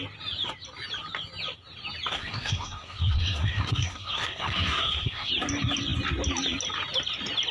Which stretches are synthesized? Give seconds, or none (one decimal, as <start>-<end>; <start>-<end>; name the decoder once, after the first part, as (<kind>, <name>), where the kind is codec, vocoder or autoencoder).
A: 2.1-5.3 (codec, SNAC)